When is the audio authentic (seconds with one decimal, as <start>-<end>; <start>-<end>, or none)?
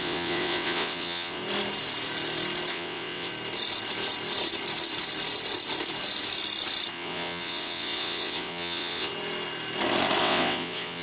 1.4-2.7; 3.3-6.9; 9.1-10.2